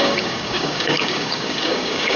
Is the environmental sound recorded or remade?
remade